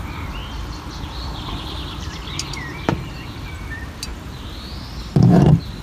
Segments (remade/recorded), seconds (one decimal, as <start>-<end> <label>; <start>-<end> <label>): 0.0-0.4 remade; 0.4-1.0 recorded; 1.0-5.8 remade